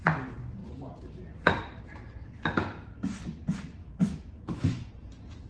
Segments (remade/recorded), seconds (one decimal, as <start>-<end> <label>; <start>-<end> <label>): 0.0-3.8 recorded; 3.8-4.9 remade; 4.9-5.5 recorded